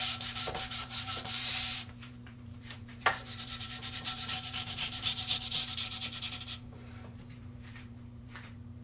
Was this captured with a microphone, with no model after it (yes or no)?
no